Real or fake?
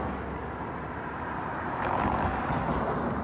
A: real